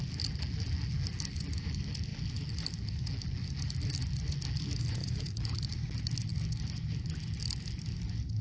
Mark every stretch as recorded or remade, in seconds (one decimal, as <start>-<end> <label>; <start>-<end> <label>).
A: 0.0-5.0 recorded; 5.0-5.6 remade; 5.6-8.4 recorded